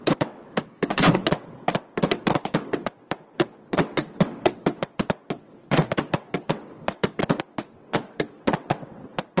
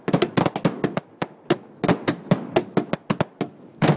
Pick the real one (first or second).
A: second